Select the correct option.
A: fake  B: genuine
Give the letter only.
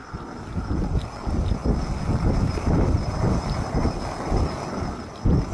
B